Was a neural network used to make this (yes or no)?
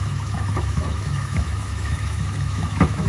yes